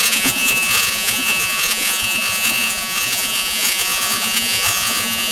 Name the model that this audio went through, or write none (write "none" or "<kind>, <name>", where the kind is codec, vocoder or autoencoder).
vocoder, Vocos